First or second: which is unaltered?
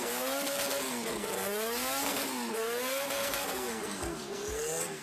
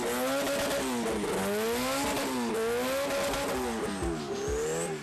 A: second